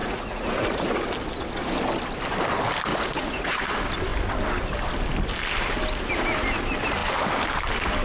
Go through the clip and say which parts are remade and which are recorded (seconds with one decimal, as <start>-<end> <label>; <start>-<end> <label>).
0.0-0.9 remade; 0.9-2.9 recorded; 2.9-3.6 remade; 3.6-8.0 recorded